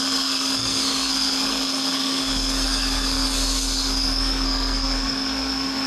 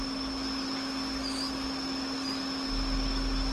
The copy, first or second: first